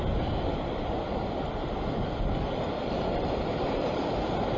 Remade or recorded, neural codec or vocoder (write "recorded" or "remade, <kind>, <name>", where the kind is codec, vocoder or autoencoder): recorded